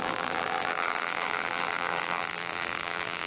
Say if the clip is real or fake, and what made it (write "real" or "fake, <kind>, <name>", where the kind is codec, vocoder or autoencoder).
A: fake, vocoder, BigVGAN v2